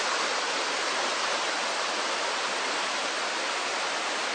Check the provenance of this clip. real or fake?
real